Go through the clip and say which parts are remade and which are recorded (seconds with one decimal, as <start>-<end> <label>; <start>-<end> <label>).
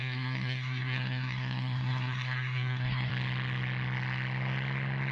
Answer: 0.0-3.1 remade; 3.1-5.1 recorded